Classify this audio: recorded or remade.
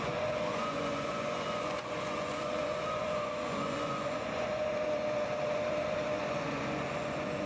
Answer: remade